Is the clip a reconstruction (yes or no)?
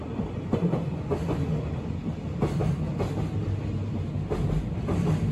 no